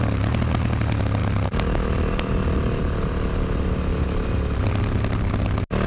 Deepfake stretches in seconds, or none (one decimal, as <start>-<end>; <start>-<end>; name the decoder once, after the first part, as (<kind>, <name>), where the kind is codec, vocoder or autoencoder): none